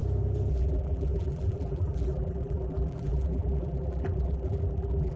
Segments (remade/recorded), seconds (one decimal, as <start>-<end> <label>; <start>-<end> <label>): 0.0-0.5 recorded; 0.5-5.2 remade